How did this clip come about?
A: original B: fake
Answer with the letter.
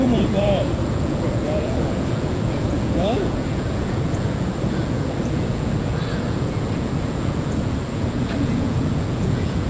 B